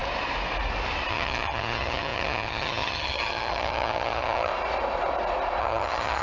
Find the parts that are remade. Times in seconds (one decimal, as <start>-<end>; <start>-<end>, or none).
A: 1.1-4.5; 5.6-6.2